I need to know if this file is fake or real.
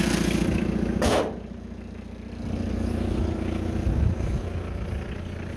real